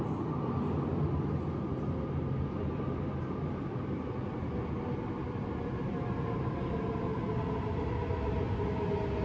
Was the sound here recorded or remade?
recorded